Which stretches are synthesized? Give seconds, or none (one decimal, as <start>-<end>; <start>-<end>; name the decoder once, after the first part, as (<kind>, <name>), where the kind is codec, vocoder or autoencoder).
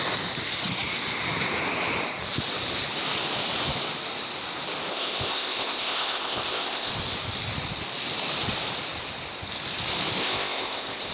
4.9-6.9 (codec, ZipCodec); 10.2-11.1